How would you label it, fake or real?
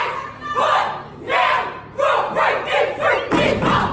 real